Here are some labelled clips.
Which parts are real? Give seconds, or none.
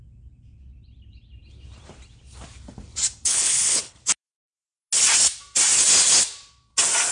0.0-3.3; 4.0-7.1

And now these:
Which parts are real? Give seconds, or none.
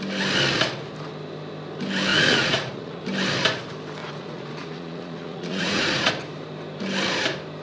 0.0-2.1; 3.0-4.0; 6.1-7.6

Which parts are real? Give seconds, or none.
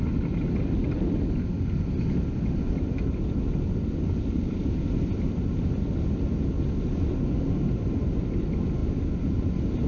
0.0-9.9